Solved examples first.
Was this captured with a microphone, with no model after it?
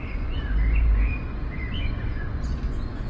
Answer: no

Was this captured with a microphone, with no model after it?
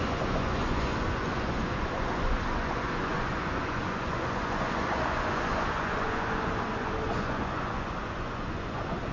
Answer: no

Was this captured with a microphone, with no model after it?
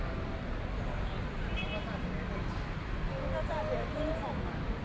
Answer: yes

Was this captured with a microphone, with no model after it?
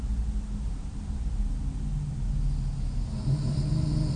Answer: yes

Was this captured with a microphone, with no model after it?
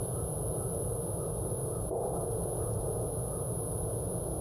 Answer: no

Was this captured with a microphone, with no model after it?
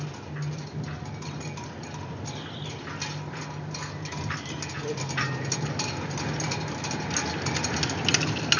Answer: yes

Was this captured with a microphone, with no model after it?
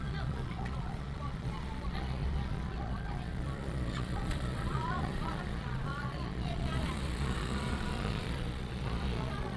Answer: no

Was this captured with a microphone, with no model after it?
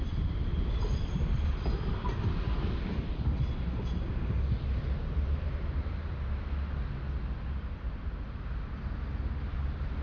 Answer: yes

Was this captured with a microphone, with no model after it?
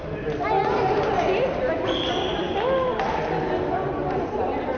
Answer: yes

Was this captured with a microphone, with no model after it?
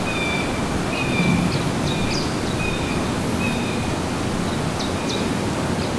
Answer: yes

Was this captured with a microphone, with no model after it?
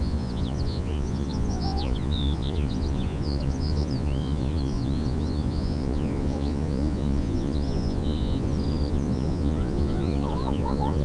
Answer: no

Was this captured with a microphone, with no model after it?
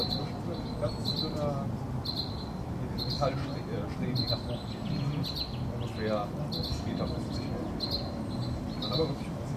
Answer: yes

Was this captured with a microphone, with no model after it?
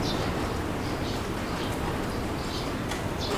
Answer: yes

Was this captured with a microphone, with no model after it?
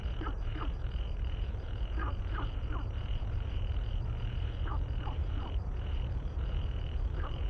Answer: no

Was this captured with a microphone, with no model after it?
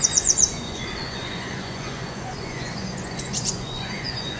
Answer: no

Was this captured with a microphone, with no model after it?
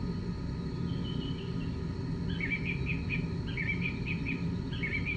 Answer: yes